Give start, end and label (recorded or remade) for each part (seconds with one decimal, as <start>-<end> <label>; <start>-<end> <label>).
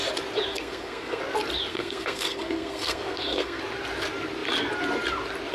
0.0-0.5 recorded; 0.5-1.2 remade; 1.2-1.7 recorded; 1.7-3.6 remade; 3.6-5.5 recorded